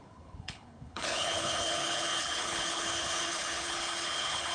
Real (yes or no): no